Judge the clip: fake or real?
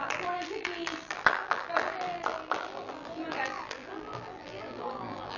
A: fake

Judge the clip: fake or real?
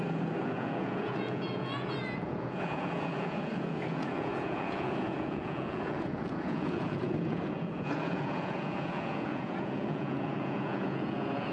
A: fake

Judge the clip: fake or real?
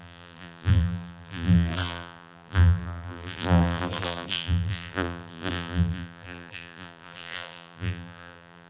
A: fake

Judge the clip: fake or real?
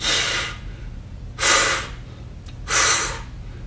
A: real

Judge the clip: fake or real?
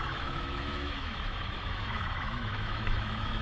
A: fake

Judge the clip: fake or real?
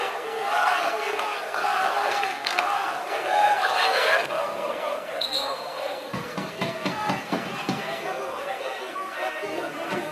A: fake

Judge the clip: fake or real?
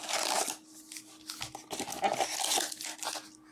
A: real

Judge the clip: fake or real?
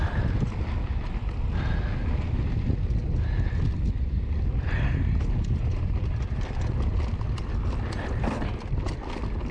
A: real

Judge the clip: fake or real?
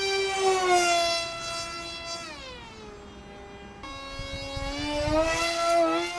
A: real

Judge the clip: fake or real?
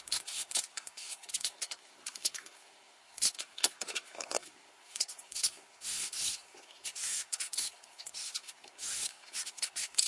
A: fake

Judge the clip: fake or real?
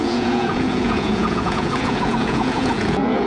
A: fake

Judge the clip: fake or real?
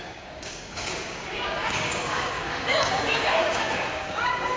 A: fake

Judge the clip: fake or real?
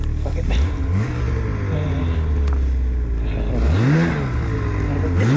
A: real